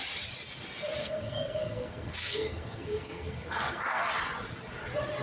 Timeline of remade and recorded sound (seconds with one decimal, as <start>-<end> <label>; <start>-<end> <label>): 0.0-1.0 recorded; 1.0-4.1 remade; 4.1-5.2 recorded